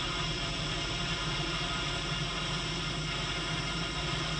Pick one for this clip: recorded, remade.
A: recorded